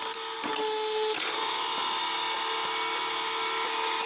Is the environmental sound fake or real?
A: real